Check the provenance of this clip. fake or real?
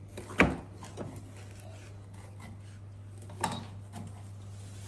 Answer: real